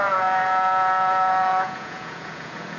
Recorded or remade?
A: remade